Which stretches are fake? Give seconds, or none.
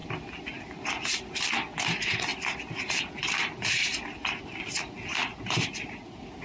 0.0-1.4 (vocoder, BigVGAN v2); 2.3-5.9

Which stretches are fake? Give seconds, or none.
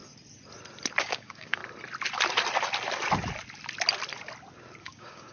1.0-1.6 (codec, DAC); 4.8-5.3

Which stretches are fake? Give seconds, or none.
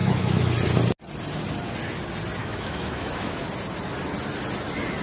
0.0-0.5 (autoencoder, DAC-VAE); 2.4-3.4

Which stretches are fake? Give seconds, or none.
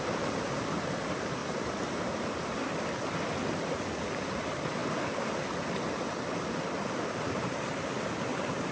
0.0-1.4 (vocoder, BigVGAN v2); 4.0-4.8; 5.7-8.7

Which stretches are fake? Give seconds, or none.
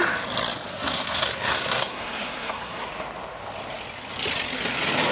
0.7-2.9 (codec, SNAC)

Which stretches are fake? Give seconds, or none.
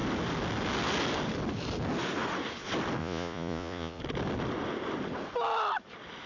3.0-4.0 (vocoder, Vocos)